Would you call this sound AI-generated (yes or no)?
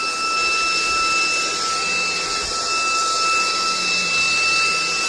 no